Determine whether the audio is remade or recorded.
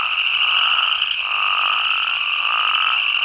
recorded